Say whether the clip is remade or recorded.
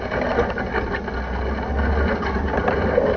recorded